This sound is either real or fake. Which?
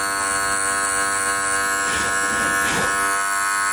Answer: real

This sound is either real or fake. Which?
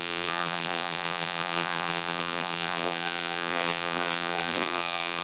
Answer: fake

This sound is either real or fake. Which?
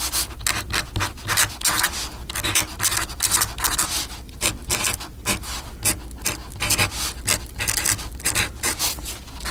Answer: real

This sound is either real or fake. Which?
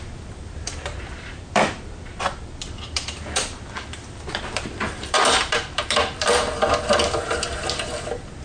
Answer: fake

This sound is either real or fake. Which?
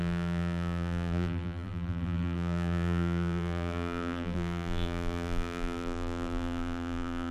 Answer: fake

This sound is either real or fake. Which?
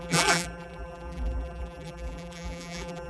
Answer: fake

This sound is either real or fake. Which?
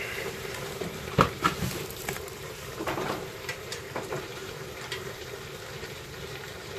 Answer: fake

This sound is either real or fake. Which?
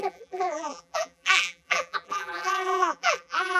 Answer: fake